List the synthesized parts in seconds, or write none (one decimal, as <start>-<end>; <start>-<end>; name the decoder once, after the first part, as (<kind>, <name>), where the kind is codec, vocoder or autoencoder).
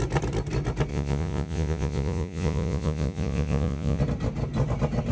0.9-4.0 (vocoder, Vocos)